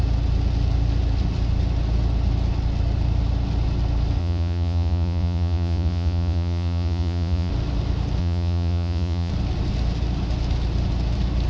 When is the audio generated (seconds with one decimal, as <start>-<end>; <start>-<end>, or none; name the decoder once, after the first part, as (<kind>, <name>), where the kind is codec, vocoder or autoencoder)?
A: 4.2-7.5 (vocoder, Vocos); 8.2-9.3